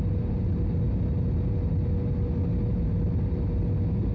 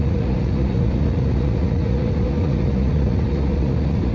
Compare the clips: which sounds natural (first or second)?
first